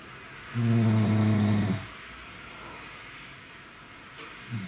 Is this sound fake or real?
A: real